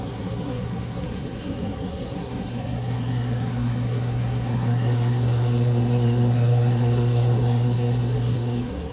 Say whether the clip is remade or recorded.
remade